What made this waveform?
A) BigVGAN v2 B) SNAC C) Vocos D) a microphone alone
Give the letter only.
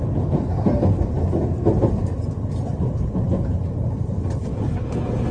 D